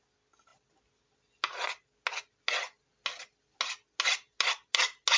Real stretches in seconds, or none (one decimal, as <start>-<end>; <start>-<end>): 0.0-5.2